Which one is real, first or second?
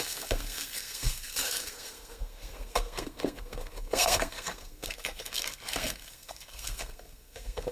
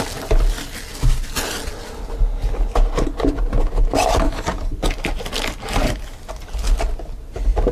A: second